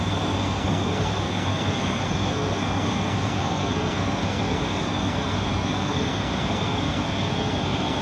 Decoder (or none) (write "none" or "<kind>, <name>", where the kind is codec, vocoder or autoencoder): codec, SNAC